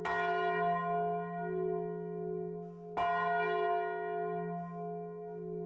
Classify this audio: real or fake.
real